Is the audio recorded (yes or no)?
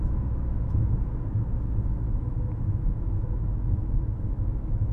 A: no